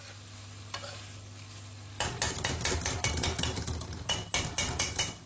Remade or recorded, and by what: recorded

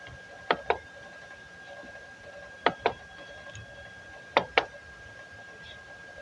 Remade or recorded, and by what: recorded